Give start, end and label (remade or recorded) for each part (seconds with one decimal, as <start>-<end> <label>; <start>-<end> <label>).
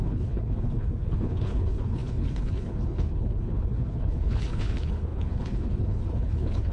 0.0-6.7 remade